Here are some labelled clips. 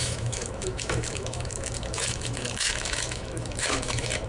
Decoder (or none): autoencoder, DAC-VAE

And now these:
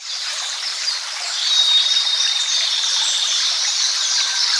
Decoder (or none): vocoder, BigVGAN v2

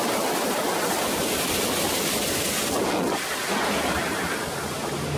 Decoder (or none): none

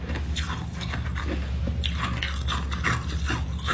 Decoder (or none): none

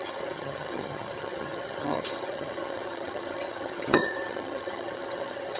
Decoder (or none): vocoder, HiFi-GAN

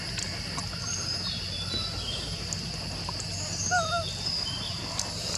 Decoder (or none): none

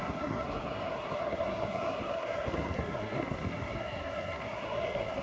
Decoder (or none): codec, SNAC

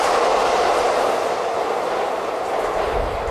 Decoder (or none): none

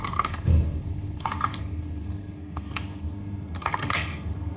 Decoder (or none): codec, SNAC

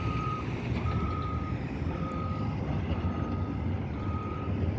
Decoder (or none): vocoder, BigVGAN v2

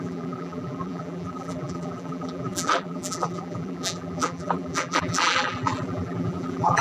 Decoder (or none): vocoder, BigVGAN v2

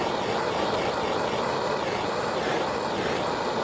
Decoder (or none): none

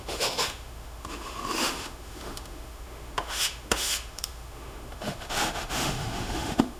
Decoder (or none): autoencoder, DAC-VAE